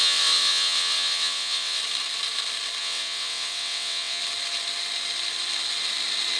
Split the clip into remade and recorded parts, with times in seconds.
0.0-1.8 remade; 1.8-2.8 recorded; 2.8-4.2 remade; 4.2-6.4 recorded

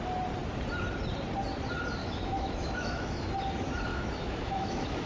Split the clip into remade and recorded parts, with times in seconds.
0.0-2.0 recorded; 2.0-3.3 remade; 3.3-3.9 recorded; 3.9-5.1 remade

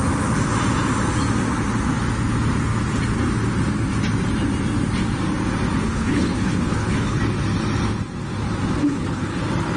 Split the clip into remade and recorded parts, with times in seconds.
0.0-5.8 recorded; 5.8-7.2 remade; 7.2-8.8 recorded; 8.8-9.4 remade; 9.4-9.8 recorded

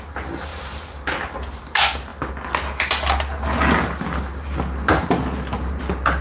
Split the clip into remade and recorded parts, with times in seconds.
0.0-6.2 recorded

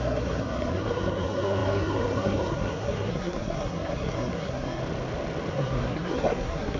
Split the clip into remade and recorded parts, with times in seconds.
0.0-4.8 remade; 4.8-5.5 recorded; 5.5-6.8 remade

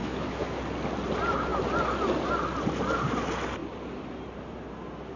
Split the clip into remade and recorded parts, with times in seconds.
0.0-0.6 remade; 0.6-5.2 recorded